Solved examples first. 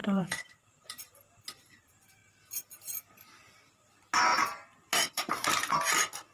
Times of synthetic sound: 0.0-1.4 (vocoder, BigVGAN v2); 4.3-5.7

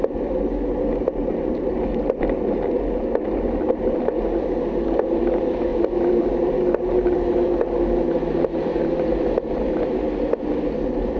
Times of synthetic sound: 5.7-6.5 (vocoder, BigVGAN v2); 8.7-9.7

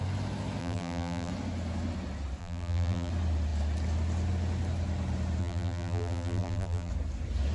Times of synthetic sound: 0.6-1.3 (vocoder, BigVGAN v2); 2.4-3.1; 5.4-6.9

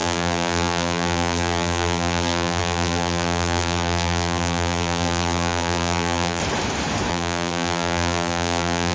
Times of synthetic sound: 0.0-6.4 (vocoder, BigVGAN v2); 7.1-8.9